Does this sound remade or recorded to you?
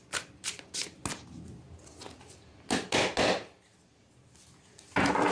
recorded